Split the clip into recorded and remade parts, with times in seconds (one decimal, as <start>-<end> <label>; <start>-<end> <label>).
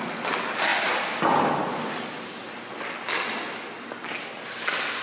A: 0.0-5.0 recorded